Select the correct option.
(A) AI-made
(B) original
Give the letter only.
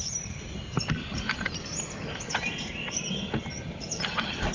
B